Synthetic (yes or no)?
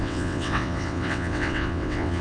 yes